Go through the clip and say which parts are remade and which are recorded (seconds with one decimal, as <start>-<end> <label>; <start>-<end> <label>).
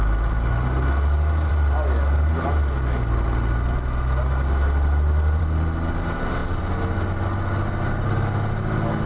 0.0-9.1 recorded